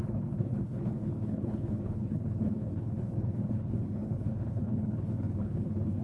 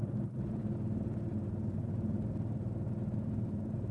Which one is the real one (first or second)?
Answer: second